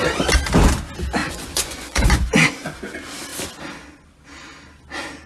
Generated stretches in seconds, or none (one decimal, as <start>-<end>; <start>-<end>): 1.2-2.7